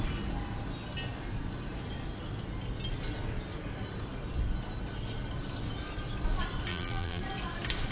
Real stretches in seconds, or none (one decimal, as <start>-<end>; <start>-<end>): 0.0-6.7; 7.2-7.9